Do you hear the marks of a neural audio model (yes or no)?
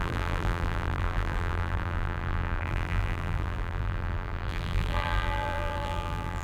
yes